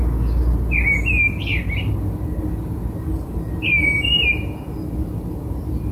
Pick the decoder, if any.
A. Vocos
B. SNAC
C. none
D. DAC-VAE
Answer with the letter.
C